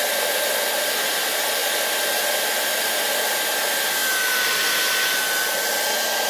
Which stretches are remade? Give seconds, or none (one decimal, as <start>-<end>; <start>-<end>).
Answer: none